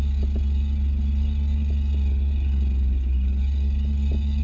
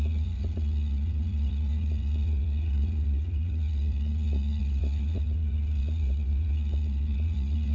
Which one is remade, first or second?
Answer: second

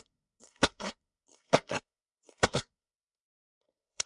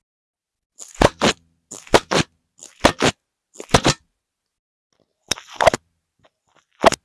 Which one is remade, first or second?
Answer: first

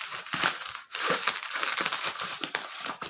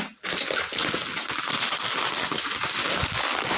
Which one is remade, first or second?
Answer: first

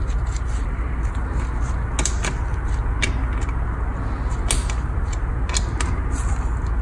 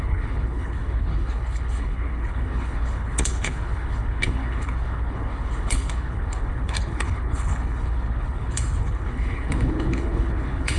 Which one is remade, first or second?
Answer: second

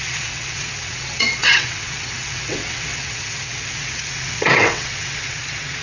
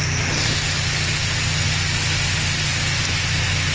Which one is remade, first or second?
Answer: first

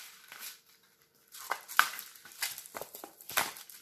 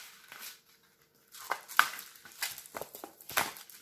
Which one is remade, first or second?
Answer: first